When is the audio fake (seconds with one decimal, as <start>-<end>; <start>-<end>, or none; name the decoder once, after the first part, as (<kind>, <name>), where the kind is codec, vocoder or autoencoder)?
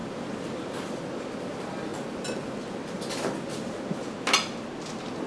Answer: none